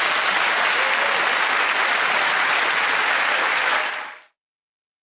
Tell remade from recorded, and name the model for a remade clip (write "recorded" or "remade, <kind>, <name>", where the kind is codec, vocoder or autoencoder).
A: recorded